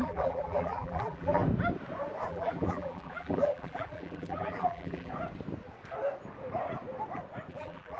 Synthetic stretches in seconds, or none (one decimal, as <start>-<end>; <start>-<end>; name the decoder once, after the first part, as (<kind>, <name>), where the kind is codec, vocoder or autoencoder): 0.0-1.4 (vocoder, BigVGAN v2); 2.3-5.1; 7.5-8.0